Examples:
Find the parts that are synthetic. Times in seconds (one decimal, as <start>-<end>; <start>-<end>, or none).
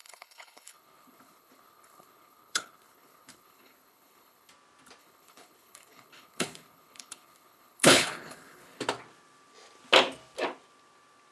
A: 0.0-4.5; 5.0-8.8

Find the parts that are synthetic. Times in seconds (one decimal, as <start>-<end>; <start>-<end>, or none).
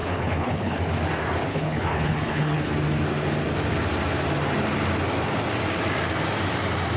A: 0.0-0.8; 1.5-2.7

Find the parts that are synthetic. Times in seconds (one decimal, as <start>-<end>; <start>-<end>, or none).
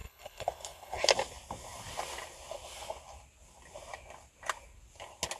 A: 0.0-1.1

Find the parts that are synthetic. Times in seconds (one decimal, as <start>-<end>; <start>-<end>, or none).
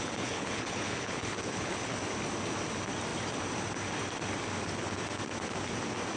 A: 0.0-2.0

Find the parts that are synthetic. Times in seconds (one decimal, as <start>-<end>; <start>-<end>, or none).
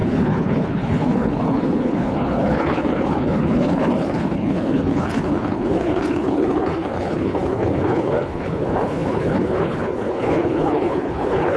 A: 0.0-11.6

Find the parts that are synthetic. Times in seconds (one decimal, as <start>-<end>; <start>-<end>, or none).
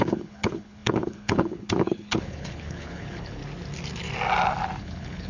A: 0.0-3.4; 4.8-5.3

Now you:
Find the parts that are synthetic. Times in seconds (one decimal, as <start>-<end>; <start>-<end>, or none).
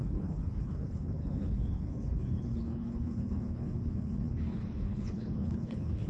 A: 0.0-6.1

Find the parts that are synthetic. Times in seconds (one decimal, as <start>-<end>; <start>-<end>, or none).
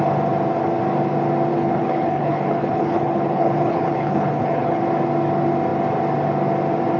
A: 1.5-4.8